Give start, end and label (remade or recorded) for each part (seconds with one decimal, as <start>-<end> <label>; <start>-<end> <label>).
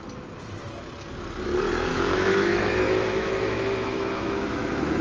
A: 0.0-1.9 recorded; 1.9-5.0 remade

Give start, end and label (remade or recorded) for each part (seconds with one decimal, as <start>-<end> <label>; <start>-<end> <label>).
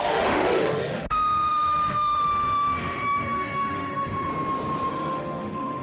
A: 0.0-4.3 remade; 4.3-4.9 recorded; 4.9-5.8 remade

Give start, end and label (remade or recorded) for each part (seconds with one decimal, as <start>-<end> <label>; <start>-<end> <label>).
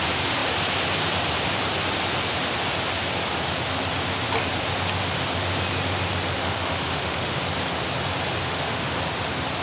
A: 0.0-6.4 recorded; 6.4-7.4 remade; 7.4-8.4 recorded; 8.4-9.0 remade; 9.0-9.6 recorded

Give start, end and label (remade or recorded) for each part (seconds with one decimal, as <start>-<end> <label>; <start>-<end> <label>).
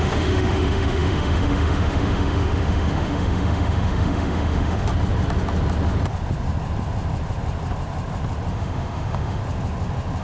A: 0.0-4.9 remade; 4.9-8.5 recorded; 8.5-9.4 remade; 9.4-10.2 recorded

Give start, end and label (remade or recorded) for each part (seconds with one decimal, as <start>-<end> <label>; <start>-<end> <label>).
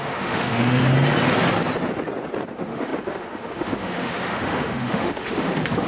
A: 0.0-0.8 remade; 0.8-2.5 recorded; 2.5-5.9 remade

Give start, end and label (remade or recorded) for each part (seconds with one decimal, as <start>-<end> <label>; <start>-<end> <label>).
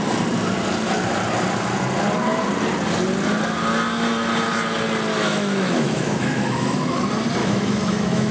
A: 0.0-5.1 recorded; 5.1-7.0 remade; 7.0-7.4 recorded; 7.4-8.3 remade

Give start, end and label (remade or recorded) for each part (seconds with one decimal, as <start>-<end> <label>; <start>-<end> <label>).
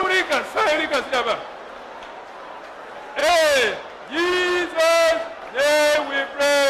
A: 0.0-1.1 remade; 1.1-6.7 recorded